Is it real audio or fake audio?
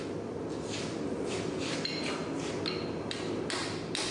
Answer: real